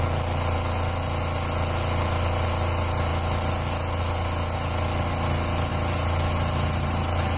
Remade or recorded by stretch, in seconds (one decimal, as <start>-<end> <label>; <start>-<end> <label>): 0.0-5.7 recorded; 5.7-7.4 remade